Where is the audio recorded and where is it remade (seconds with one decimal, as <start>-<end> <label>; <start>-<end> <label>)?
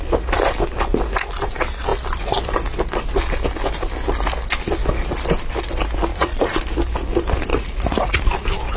0.0-6.1 recorded; 6.1-6.6 remade; 6.6-7.5 recorded; 7.5-8.2 remade; 8.2-8.8 recorded